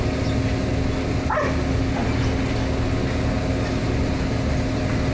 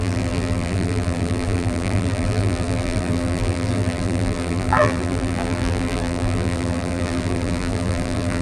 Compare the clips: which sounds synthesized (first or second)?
second